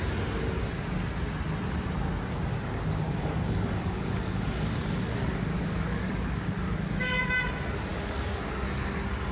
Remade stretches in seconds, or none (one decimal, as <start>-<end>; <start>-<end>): 2.5-7.3; 7.9-9.3